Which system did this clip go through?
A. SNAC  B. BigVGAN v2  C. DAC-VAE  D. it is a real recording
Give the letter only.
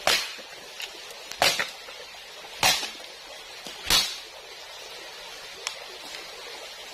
D